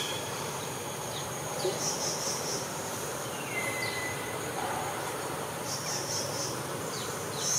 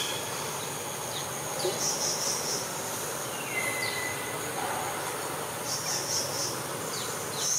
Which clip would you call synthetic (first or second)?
first